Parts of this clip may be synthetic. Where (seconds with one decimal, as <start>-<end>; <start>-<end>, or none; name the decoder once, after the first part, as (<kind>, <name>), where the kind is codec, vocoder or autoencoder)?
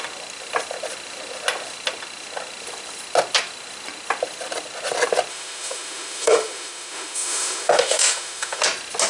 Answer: 5.3-8.6 (autoencoder, DAC-VAE)